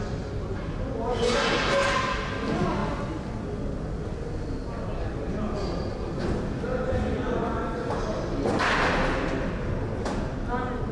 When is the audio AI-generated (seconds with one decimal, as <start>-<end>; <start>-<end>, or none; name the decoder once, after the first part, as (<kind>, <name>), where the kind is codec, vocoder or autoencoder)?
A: 6.7-8.4 (vocoder, BigVGAN v2)

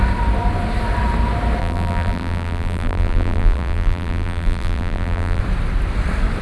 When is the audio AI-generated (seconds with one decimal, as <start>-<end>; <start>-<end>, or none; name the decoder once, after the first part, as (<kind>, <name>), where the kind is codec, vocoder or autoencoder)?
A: 1.6-5.4 (vocoder, BigVGAN v2)